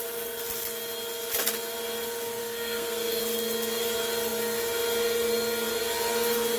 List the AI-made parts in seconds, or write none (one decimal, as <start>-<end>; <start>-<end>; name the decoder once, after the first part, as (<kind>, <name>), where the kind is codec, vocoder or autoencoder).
2.4-3.2 (codec, SNAC)